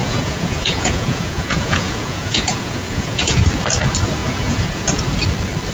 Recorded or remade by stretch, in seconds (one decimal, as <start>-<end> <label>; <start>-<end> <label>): 0.0-3.4 remade; 3.4-4.2 recorded; 4.2-5.0 remade; 5.0-5.7 recorded